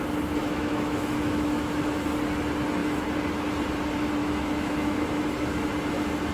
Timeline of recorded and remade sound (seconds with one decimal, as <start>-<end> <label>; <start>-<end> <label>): 0.0-0.4 recorded; 0.4-2.0 remade; 2.0-4.2 recorded; 4.2-5.7 remade; 5.7-6.3 recorded